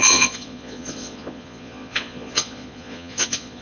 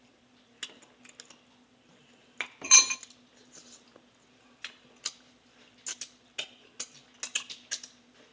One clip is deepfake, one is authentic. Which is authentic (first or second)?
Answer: second